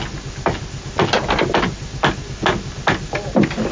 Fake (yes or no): no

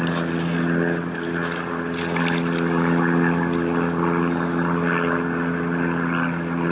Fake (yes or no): no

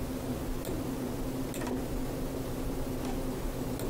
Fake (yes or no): no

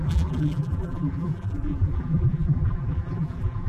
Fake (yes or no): yes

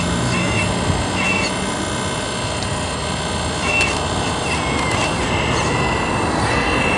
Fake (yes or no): no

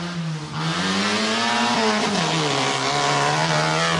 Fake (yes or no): no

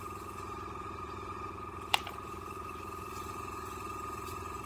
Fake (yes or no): yes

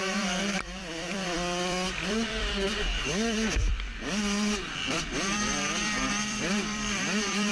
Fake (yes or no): yes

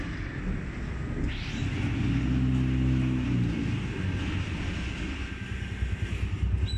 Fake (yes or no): no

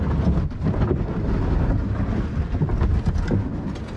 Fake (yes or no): no